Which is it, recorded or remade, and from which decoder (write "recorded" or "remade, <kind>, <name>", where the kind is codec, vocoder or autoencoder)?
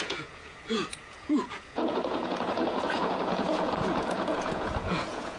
remade, vocoder, Vocos